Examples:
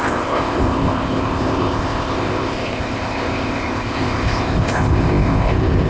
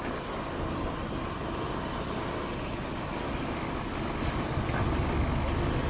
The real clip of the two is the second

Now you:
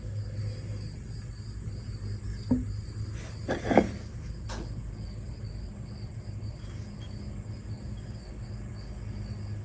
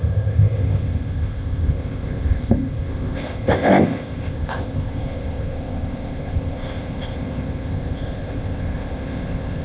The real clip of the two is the first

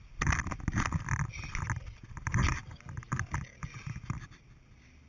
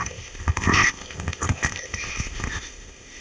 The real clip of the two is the first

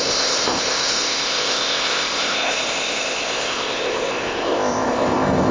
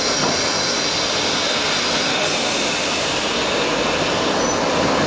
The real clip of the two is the second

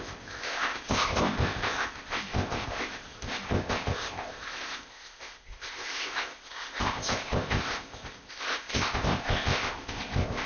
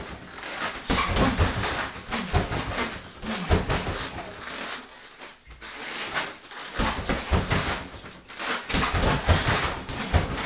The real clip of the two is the second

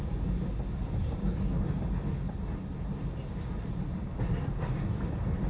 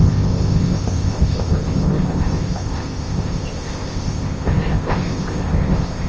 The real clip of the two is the first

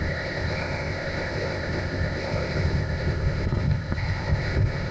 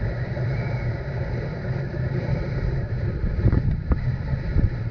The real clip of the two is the second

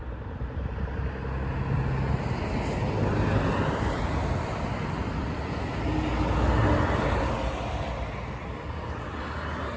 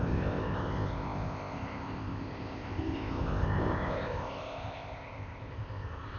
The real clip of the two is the first